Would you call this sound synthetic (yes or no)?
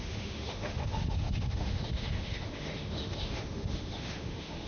yes